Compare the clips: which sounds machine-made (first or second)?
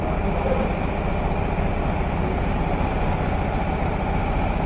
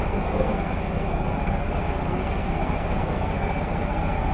second